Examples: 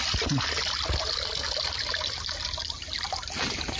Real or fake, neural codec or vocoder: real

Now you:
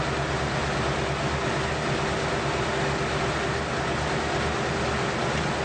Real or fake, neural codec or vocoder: real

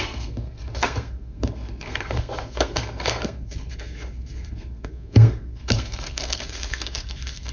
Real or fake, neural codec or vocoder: fake, codec, SNAC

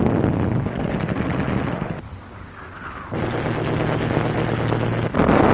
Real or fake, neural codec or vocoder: real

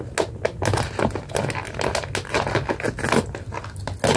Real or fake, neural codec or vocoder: real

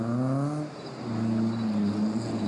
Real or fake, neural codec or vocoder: real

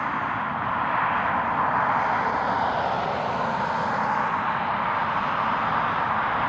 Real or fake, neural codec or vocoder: real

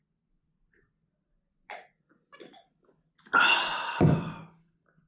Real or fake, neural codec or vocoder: real